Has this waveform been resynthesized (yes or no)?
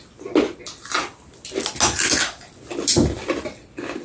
no